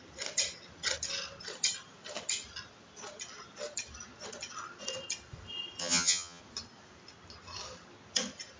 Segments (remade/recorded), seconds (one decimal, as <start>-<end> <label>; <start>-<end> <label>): 0.0-5.8 recorded; 5.8-6.4 remade; 6.4-8.6 recorded